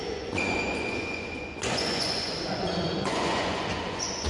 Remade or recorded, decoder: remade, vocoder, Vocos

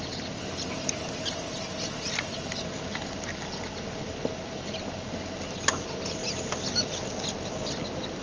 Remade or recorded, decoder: recorded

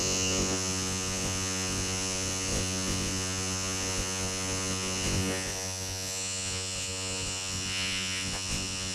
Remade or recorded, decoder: remade, vocoder, Vocos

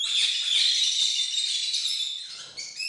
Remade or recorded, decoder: recorded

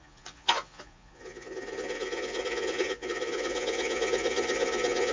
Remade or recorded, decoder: remade, vocoder, Vocos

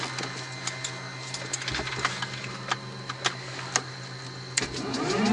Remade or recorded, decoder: recorded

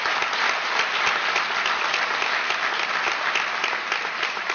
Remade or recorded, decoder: recorded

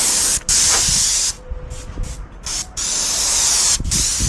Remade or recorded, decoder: recorded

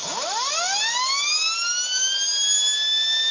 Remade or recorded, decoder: recorded